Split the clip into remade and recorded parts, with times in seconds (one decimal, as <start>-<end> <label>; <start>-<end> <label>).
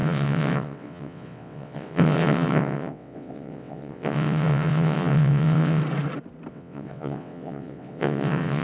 0.0-5.8 remade; 5.8-6.5 recorded; 6.5-8.6 remade